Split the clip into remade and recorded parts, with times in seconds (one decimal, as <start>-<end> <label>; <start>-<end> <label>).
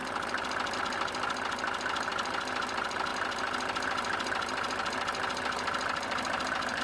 0.0-6.8 recorded